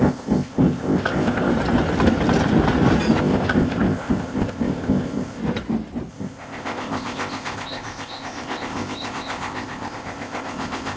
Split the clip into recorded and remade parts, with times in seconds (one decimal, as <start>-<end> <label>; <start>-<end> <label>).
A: 0.0-1.5 remade; 1.5-3.2 recorded; 3.2-5.4 remade; 5.4-6.1 recorded; 6.1-11.0 remade